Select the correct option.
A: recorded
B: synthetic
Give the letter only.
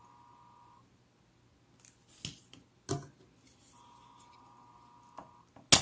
A